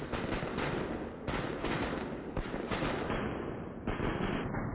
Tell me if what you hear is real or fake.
real